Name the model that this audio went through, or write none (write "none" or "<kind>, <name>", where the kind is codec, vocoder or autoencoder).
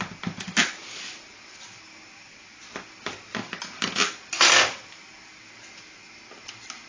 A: none